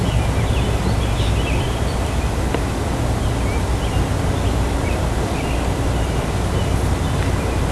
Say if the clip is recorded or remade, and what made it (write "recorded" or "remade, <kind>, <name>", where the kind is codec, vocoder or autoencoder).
recorded